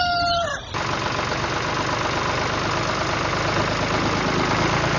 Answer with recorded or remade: recorded